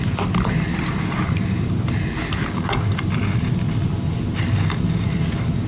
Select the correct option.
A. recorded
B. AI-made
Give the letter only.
A